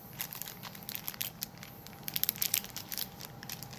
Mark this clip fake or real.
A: fake